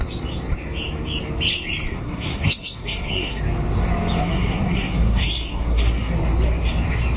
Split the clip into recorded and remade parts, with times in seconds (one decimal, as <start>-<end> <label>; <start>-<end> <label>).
0.0-1.9 recorded; 1.9-3.4 remade; 3.4-4.2 recorded; 4.2-6.1 remade; 6.1-7.2 recorded